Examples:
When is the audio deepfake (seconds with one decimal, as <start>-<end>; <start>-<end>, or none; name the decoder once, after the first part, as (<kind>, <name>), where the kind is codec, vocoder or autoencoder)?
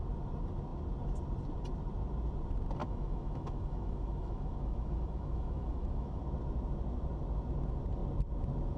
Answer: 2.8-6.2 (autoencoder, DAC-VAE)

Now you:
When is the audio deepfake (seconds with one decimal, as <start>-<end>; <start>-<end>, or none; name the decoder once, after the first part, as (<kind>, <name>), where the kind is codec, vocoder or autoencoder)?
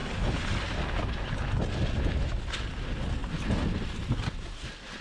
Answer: none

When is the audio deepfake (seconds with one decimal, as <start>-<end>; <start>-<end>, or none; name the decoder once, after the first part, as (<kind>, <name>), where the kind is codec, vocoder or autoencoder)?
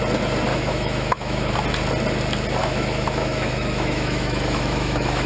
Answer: 0.5-1.5 (autoencoder, DAC-VAE); 2.6-5.3